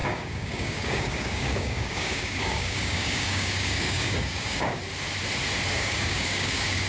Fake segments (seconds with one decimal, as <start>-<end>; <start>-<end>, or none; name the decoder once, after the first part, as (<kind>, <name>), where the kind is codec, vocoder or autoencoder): 0.0-4.8 (codec, DAC); 5.8-6.9